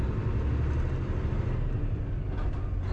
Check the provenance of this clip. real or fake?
real